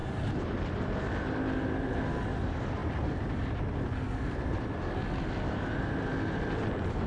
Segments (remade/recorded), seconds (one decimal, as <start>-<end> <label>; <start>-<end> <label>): 0.0-7.1 recorded

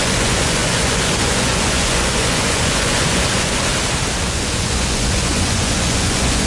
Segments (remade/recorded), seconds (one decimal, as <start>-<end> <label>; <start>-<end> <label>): 0.0-3.7 remade; 3.7-4.2 recorded; 4.2-6.5 remade

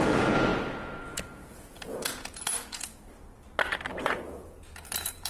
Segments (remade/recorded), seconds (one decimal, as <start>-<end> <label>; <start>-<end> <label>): 0.0-2.9 remade; 2.9-4.0 recorded; 4.0-5.3 remade

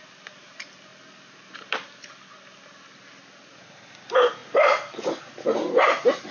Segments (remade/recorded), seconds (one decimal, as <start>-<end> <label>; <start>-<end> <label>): 0.0-6.3 recorded

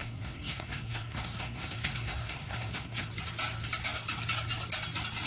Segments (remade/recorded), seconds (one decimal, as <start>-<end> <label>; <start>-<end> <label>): 0.0-3.1 remade; 3.1-5.3 recorded

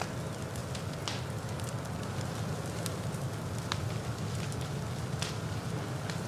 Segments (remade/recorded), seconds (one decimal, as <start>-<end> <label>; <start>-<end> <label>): 0.0-6.3 recorded

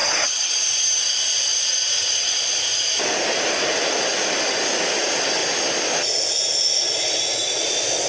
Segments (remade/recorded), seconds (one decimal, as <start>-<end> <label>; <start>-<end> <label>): 0.0-0.5 remade; 0.5-8.1 recorded

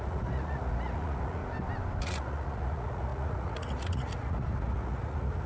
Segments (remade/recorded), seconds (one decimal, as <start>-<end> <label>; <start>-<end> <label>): 0.0-1.4 remade; 1.4-2.0 recorded; 2.0-5.5 remade